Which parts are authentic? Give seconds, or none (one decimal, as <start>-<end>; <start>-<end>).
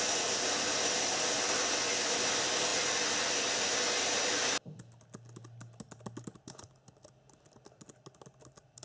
0.0-8.8